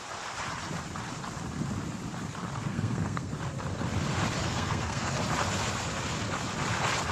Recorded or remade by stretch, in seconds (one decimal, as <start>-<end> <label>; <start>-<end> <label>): 0.0-2.7 recorded; 2.7-3.3 remade; 3.3-4.4 recorded; 4.4-5.2 remade; 5.2-7.1 recorded

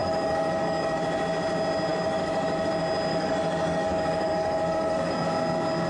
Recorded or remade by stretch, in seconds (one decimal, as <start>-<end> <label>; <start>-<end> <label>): 0.0-1.0 remade; 1.0-1.9 recorded; 1.9-2.7 remade; 2.7-3.1 recorded; 3.1-5.1 remade; 5.1-5.9 recorded

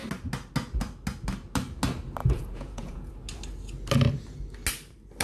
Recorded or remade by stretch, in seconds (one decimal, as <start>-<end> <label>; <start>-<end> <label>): 0.0-2.2 recorded; 2.2-3.1 remade; 3.1-5.2 recorded

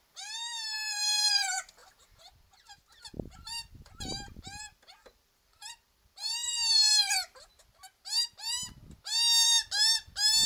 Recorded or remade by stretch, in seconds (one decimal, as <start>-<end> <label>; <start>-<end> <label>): 0.0-6.9 remade; 6.9-10.5 recorded